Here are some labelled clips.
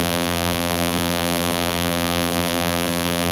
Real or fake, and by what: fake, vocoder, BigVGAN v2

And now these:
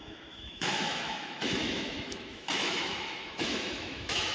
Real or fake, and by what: fake, autoencoder, DAC-VAE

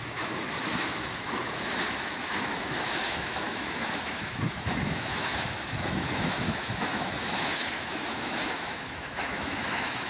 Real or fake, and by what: fake, autoencoder, DAC-VAE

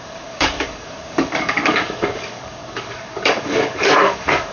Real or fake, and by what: fake, codec, DAC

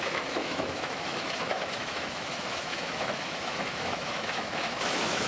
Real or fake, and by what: fake, autoencoder, DAC-VAE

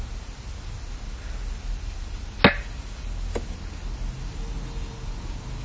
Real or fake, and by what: real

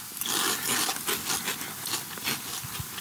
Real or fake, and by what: real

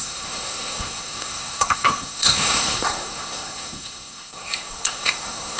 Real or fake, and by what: fake, codec, SNAC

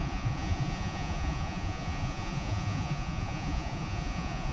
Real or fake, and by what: fake, vocoder, Vocos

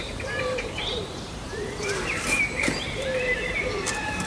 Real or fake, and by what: fake, vocoder, BigVGAN v2